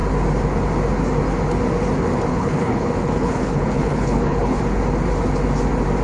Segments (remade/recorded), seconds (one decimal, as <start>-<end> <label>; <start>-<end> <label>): 0.0-2.3 recorded; 2.3-4.6 remade; 4.6-6.0 recorded